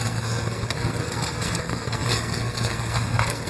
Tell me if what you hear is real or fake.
fake